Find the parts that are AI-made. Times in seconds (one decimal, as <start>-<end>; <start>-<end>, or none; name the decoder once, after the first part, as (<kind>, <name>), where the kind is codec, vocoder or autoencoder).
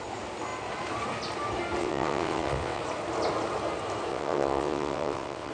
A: 1.8-2.8 (vocoder, WaveNeXt); 4.1-5.5